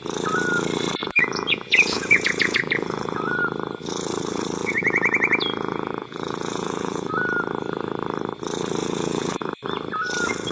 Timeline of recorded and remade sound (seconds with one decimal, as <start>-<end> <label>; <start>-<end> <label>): 0.0-1.0 recorded; 1.0-3.4 remade; 3.4-4.6 recorded; 4.6-7.1 remade; 7.1-8.8 recorded; 8.8-9.5 remade; 9.5-10.5 recorded